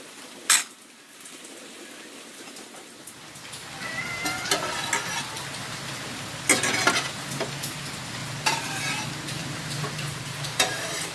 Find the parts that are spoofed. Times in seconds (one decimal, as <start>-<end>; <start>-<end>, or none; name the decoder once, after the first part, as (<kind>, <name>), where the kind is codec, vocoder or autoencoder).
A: 8.2-8.9 (vocoder, BigVGAN v2); 9.4-11.1